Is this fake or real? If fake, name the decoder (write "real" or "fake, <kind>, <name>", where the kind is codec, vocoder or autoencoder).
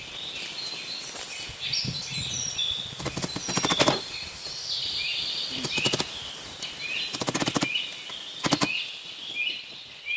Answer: real